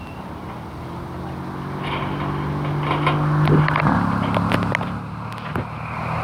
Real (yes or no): yes